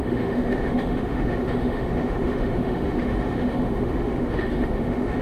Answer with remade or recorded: remade